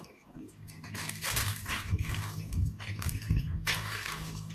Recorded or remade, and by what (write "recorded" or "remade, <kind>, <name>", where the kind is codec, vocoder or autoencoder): remade, codec, DAC